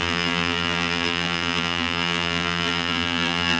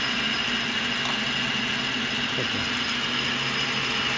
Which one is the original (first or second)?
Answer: second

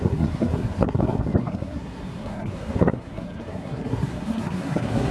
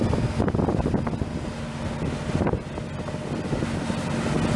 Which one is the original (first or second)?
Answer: second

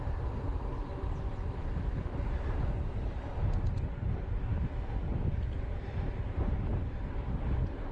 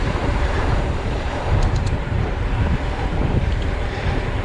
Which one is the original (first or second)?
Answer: first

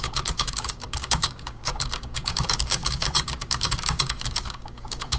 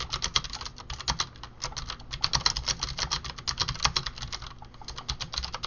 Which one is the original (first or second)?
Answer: second